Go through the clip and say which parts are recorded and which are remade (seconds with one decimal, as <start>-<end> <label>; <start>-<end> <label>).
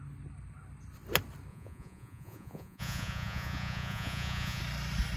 0.0-1.5 recorded; 1.5-4.6 remade; 4.6-5.2 recorded